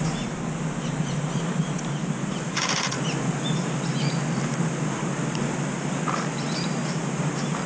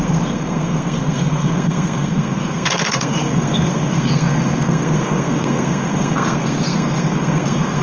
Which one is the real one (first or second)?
first